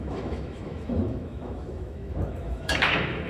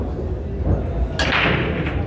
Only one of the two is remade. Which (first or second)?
first